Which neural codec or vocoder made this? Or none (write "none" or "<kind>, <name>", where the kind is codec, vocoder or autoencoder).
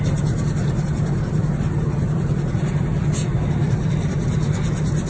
none